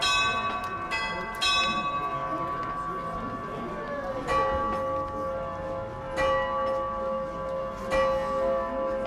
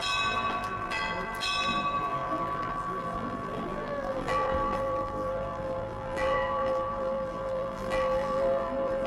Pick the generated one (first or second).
second